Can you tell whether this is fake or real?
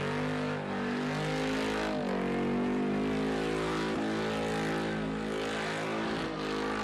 real